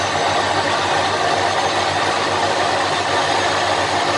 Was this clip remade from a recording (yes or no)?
no